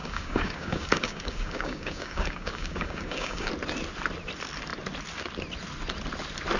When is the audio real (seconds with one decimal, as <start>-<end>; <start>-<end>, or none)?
3.5-6.6